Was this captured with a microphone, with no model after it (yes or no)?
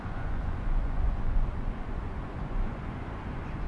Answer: no